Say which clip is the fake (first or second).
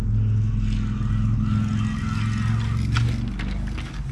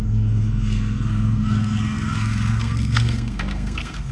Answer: second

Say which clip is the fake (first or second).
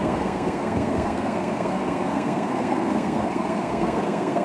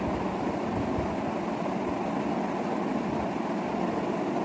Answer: first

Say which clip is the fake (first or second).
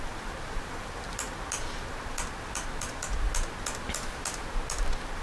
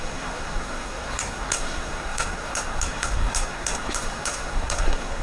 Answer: second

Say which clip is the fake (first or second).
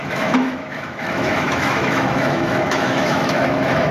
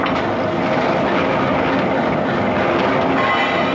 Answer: first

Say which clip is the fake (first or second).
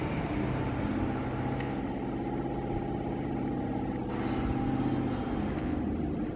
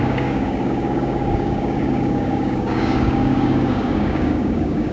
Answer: second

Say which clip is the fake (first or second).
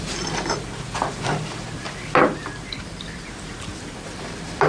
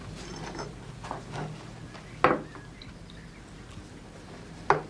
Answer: first